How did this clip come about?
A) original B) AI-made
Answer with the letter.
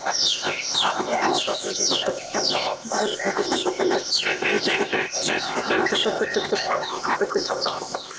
B